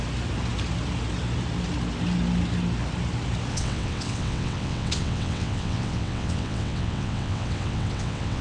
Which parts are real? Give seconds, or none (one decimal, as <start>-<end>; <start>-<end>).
0.0-3.5